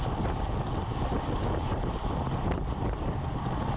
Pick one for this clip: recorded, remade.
recorded